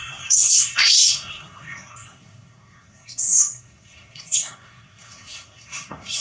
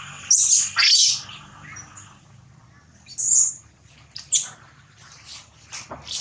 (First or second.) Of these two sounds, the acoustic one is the second